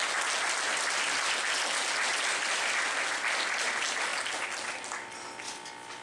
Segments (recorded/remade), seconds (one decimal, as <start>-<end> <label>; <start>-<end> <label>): 0.0-6.0 recorded